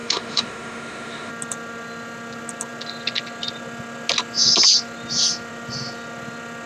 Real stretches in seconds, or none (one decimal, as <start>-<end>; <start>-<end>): 1.3-6.7

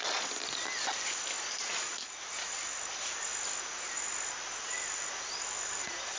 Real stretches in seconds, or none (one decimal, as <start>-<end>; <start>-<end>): 0.0-6.2

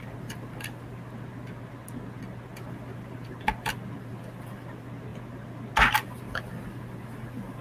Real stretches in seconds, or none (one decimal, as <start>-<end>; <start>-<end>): 0.0-7.6